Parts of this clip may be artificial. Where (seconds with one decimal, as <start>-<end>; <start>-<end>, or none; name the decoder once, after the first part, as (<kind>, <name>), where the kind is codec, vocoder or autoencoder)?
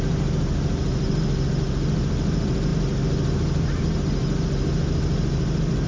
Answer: none